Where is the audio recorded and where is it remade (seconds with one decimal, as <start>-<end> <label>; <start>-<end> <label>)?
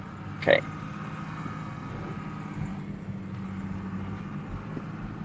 0.0-1.2 recorded; 1.2-1.9 remade; 1.9-5.2 recorded